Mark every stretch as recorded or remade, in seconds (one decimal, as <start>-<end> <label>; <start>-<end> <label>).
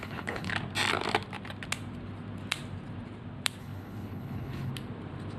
0.0-0.5 remade; 0.5-3.6 recorded; 3.6-4.7 remade; 4.7-5.4 recorded